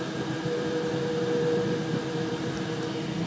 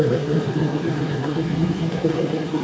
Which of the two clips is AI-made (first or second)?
second